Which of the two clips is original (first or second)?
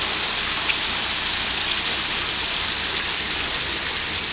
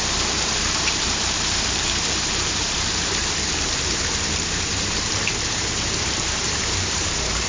first